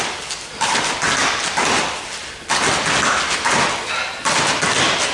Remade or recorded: recorded